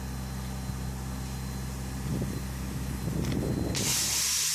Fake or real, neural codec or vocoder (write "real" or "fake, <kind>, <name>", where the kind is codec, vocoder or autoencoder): real